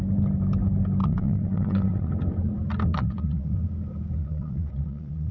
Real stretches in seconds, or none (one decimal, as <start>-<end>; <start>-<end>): 0.0-1.0; 2.1-2.9; 3.6-4.2